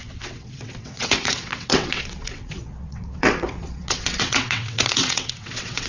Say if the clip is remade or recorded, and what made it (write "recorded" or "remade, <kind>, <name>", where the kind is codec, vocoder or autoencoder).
remade, vocoder, WaveNeXt